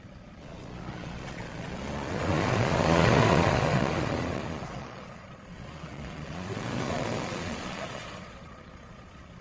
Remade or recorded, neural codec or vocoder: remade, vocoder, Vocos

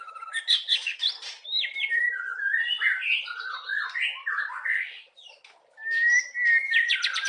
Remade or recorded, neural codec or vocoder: recorded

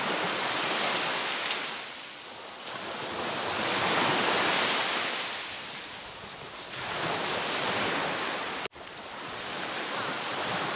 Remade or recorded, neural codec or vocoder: recorded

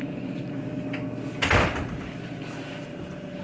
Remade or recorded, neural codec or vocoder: recorded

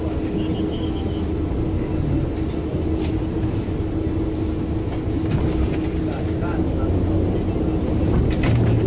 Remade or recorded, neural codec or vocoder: recorded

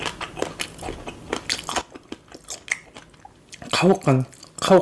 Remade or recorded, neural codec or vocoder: recorded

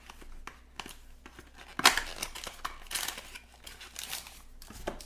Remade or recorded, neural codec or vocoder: recorded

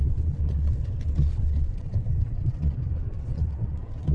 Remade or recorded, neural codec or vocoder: remade, vocoder, WaveNeXt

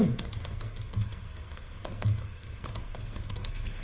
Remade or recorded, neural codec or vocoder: remade, codec, SNAC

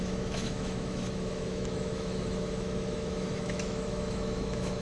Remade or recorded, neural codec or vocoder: remade, autoencoder, DAC-VAE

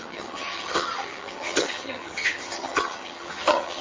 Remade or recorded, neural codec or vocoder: remade, vocoder, HiFi-GAN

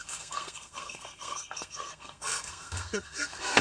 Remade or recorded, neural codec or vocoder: remade, codec, SNAC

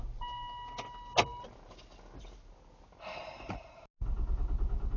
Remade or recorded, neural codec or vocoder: recorded